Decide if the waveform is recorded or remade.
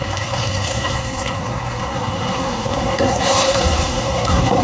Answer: remade